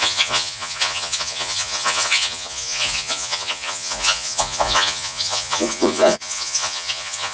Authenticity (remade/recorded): remade